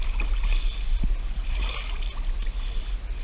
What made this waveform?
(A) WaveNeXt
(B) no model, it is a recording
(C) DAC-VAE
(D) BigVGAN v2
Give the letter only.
B